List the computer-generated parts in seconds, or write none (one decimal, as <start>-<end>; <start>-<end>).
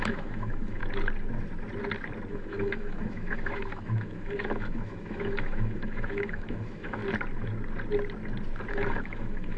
0.0-0.8; 2.3-7.0; 8.7-9.6